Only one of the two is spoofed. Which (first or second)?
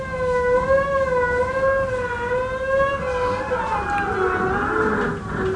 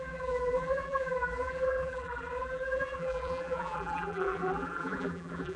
second